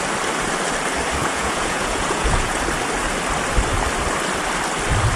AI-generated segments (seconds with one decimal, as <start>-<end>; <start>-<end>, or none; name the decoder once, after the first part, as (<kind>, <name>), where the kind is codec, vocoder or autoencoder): 1.2-2.6 (vocoder, Vocos)